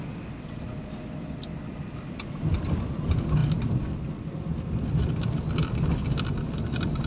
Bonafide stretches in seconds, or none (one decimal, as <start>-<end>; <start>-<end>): 0.0-7.1